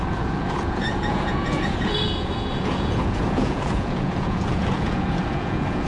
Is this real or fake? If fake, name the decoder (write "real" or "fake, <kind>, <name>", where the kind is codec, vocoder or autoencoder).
fake, vocoder, Vocos